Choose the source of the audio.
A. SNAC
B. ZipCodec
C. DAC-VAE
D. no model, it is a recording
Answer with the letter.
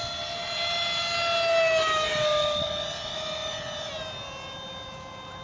D